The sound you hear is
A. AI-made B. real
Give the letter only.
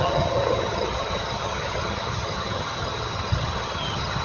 A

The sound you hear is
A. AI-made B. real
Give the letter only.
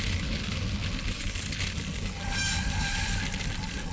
B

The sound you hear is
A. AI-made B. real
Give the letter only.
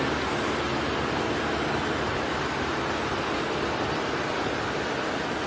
B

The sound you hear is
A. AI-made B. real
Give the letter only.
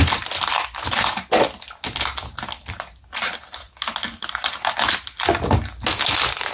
B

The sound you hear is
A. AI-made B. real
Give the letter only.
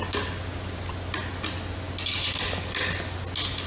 B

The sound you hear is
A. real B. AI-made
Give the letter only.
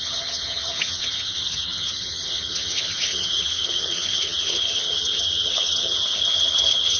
B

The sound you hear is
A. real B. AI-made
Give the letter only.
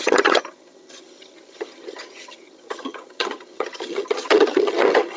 B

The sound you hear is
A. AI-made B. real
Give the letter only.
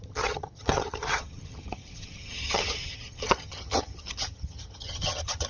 A